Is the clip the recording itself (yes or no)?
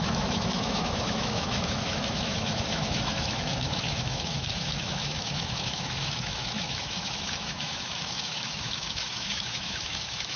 no